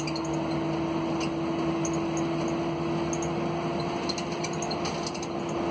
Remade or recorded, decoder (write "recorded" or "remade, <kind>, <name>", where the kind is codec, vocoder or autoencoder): recorded